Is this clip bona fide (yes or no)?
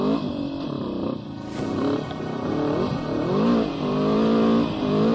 yes